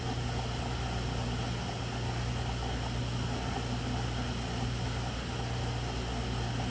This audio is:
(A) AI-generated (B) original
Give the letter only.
B